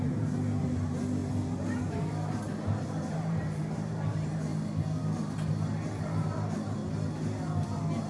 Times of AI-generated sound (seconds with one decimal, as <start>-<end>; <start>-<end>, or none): 0.0-1.2; 1.9-4.5; 6.0-6.8